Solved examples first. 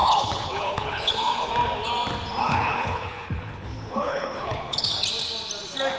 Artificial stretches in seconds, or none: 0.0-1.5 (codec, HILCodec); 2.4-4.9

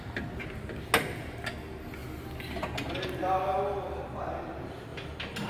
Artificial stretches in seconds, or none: none